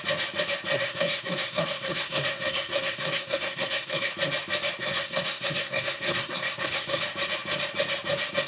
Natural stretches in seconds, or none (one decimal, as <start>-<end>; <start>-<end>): 0.0-0.7; 4.1-4.8; 7.0-8.5